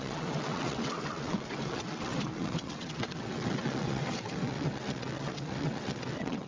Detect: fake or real fake